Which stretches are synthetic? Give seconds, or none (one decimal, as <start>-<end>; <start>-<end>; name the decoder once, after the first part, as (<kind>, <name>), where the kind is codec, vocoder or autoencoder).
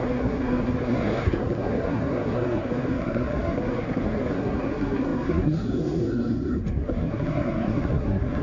0.0-8.4 (codec, SNAC)